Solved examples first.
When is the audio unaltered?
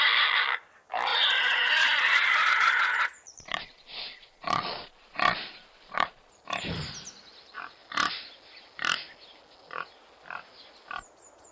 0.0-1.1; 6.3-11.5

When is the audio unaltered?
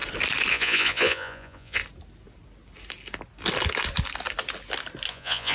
0.0-0.5; 1.8-5.1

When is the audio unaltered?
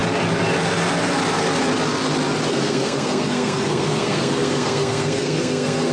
0.0-2.5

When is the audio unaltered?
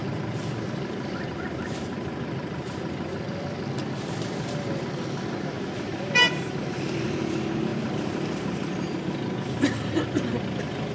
4.5-5.9; 6.9-7.7; 10.3-10.9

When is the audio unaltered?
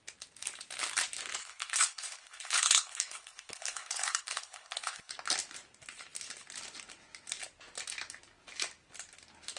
0.0-1.4; 5.1-9.6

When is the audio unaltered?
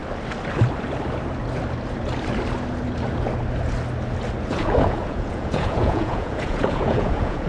0.0-4.5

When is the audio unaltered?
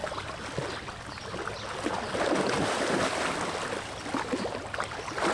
0.0-5.3